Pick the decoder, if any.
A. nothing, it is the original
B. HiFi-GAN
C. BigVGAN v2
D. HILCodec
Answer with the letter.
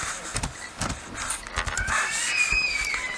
A